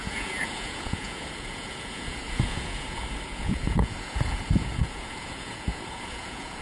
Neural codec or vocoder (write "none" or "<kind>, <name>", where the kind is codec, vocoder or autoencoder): vocoder, Vocos